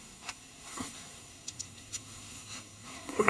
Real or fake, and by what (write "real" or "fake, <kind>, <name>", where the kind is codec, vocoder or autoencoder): fake, codec, SNAC